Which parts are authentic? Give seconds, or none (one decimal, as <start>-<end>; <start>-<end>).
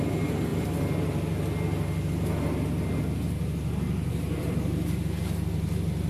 0.0-4.1; 5.0-6.1